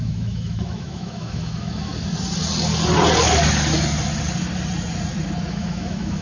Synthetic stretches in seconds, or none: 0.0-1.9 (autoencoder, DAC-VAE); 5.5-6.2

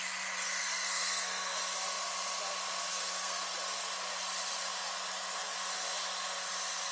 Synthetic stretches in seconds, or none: 0.6-1.6 (codec, SNAC); 2.9-3.4

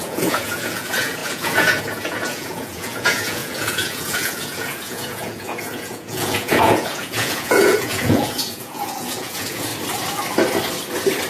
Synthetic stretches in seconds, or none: 0.0-9.7 (vocoder, Vocos)

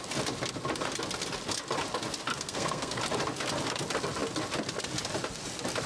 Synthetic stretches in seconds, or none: 2.3-3.0 (codec, SNAC)

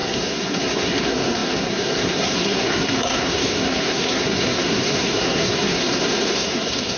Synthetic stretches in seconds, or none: 0.0-7.0 (codec, SNAC)